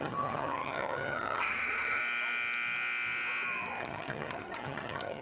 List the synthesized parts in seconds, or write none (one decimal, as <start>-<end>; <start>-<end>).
0.0-2.0; 3.8-5.2